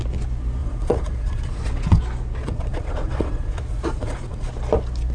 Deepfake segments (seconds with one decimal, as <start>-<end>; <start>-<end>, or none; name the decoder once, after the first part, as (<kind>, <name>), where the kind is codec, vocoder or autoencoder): 0.6-2.0 (vocoder, Vocos); 2.4-4.5